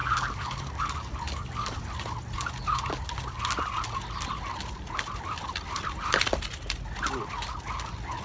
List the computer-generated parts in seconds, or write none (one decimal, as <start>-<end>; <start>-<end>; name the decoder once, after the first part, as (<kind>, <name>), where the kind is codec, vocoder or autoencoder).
0.0-1.8 (codec, DAC)